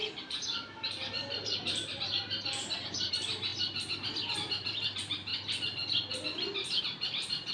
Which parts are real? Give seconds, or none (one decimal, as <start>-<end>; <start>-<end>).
3.5-4.5; 5.3-6.8